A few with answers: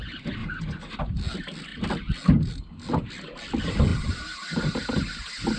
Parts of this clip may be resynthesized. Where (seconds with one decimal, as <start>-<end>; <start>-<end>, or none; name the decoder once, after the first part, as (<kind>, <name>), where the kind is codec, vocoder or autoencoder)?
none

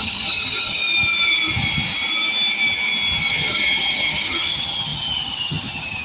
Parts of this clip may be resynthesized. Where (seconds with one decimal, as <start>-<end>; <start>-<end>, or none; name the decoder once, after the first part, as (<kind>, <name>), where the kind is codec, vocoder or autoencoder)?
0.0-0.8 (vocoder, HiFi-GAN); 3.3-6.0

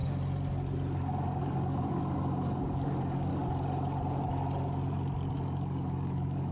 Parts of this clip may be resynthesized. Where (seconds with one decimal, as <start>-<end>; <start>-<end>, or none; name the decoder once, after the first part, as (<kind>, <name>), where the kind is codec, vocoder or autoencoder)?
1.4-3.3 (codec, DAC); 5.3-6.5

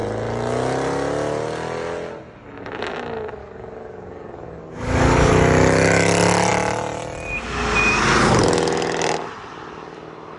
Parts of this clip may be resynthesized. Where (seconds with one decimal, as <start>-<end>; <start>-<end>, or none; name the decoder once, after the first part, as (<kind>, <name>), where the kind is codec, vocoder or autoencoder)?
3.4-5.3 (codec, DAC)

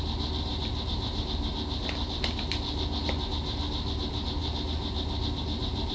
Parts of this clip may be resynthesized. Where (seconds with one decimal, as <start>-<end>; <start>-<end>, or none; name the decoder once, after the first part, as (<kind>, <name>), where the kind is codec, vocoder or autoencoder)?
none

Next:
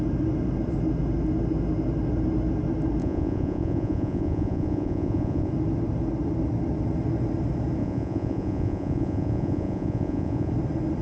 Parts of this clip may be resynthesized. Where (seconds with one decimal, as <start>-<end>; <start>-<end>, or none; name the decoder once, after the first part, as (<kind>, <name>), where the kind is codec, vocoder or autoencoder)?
3.0-5.5 (vocoder, Vocos); 7.8-10.5